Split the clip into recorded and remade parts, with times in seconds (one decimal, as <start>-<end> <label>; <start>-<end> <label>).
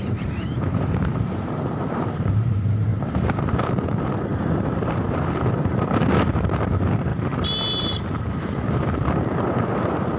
0.0-4.3 remade; 4.3-4.9 recorded; 4.9-7.1 remade; 7.1-7.8 recorded; 7.8-10.2 remade